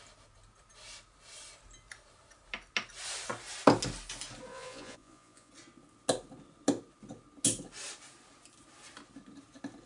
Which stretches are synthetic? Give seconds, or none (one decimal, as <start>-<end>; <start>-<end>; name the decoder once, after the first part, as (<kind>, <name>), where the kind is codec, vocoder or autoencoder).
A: 4.5-5.5 (vocoder, Vocos)